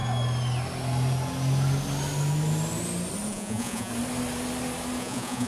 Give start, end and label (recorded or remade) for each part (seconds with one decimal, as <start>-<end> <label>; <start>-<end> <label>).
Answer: 0.0-3.3 recorded; 3.3-3.9 remade; 3.9-5.0 recorded; 5.0-5.5 remade